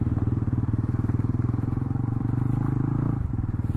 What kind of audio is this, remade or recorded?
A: remade